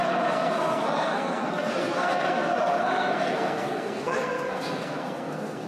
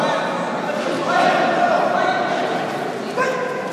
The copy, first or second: first